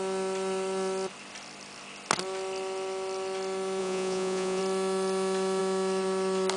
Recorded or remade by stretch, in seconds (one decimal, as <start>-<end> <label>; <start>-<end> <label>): 0.0-3.8 recorded; 3.8-4.6 remade; 4.6-6.6 recorded